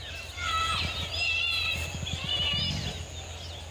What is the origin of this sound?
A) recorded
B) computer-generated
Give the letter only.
A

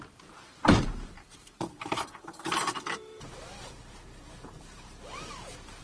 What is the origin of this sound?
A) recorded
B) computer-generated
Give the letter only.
B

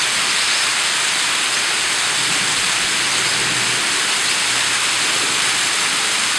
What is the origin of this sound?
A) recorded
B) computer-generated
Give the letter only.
A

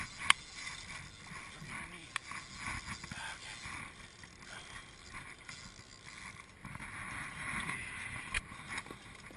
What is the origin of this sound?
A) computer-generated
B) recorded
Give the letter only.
B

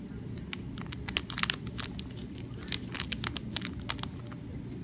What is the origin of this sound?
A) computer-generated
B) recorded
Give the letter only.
B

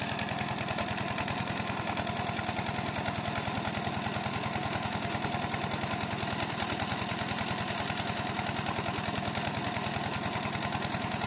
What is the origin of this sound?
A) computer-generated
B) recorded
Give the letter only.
B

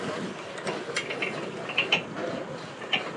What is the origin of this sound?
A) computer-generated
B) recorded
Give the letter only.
B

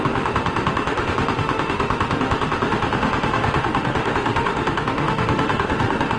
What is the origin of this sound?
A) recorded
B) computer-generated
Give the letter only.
B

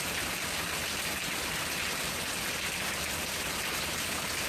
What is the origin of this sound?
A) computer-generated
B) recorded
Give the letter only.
B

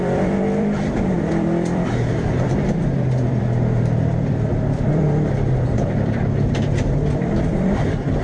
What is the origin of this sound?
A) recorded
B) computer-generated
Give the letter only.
B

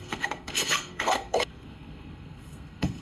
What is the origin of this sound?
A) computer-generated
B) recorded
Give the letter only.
A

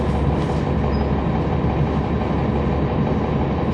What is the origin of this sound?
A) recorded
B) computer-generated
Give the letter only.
A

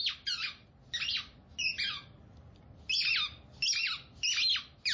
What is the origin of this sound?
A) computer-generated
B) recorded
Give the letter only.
B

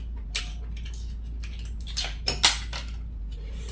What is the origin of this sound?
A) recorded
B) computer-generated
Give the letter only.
A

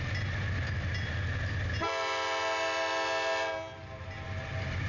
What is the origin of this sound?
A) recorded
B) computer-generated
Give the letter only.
A